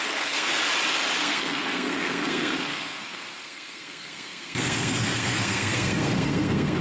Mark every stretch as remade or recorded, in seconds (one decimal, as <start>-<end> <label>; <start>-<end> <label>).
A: 0.0-0.6 remade; 0.6-1.2 recorded; 1.2-6.8 remade